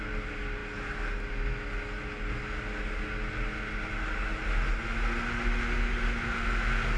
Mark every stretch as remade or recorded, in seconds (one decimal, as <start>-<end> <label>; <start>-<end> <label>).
0.0-7.0 recorded